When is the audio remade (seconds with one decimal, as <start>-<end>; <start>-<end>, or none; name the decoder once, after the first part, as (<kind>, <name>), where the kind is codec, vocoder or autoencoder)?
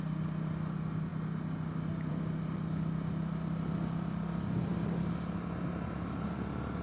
none